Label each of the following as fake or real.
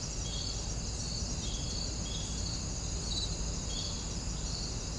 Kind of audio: real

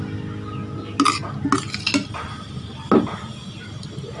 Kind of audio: real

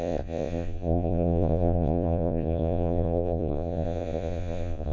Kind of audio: fake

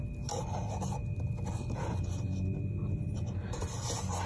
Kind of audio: real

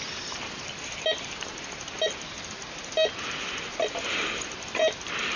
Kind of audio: real